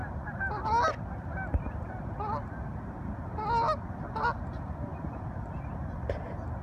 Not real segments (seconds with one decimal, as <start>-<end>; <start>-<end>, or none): 4.9-5.5